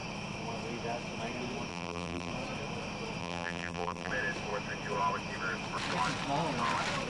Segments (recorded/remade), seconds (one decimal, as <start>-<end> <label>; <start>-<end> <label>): 0.0-1.7 recorded; 1.7-2.3 remade; 2.3-3.2 recorded; 3.2-4.1 remade; 4.1-7.1 recorded